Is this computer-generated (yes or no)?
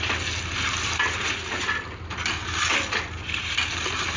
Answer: no